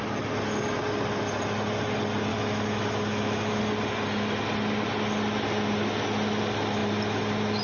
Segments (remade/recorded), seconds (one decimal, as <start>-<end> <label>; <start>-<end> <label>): 0.0-2.3 recorded; 2.3-3.6 remade; 3.6-7.6 recorded